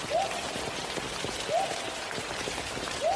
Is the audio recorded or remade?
recorded